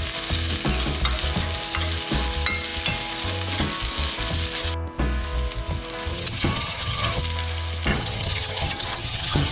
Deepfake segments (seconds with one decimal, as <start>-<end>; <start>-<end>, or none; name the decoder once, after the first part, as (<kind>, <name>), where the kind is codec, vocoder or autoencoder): 6.1-7.2 (vocoder, HiFi-GAN); 7.9-9.5